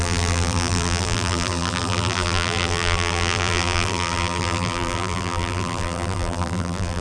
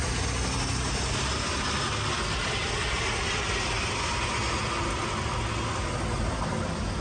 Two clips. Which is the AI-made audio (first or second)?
first